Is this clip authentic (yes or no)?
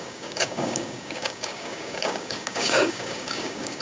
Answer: no